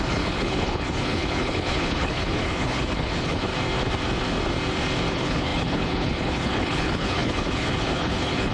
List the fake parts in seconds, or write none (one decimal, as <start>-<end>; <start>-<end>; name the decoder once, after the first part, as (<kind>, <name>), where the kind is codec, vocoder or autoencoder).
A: 0.0-3.5 (codec, HILCodec); 5.1-8.5